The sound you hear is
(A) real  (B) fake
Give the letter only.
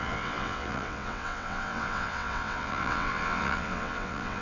B